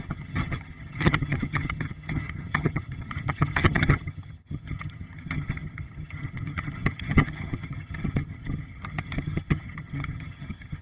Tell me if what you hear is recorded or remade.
remade